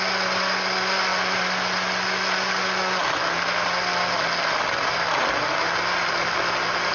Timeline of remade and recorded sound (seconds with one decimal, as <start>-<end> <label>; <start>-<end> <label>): 0.0-6.9 recorded